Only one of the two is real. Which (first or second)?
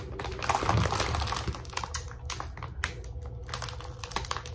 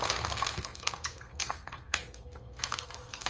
first